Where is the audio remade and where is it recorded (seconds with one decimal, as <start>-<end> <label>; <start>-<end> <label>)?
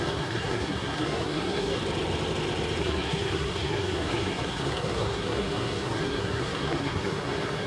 0.0-1.8 remade; 1.8-2.8 recorded; 2.8-7.7 remade